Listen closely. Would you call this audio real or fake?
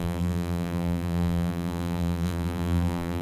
fake